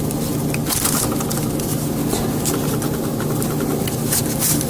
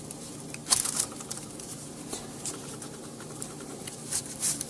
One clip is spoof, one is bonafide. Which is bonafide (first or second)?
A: first